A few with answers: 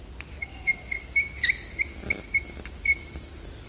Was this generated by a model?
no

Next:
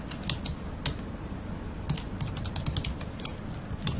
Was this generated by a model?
no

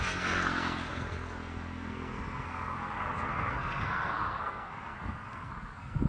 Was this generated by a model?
yes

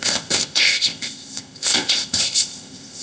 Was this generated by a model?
yes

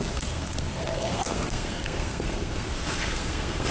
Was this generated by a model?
yes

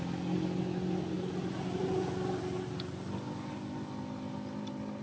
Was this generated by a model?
no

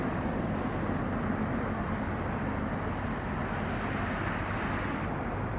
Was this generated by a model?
no